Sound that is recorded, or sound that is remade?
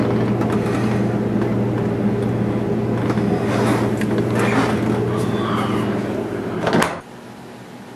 recorded